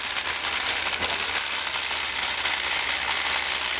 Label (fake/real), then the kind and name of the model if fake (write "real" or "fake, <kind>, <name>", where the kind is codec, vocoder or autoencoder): real